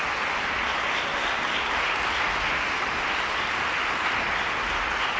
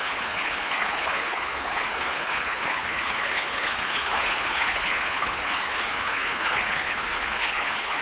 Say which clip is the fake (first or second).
second